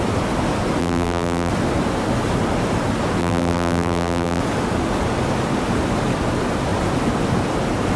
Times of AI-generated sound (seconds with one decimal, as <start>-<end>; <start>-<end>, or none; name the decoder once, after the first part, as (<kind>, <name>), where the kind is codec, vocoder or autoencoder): 0.8-1.5 (vocoder, BigVGAN v2); 3.2-4.4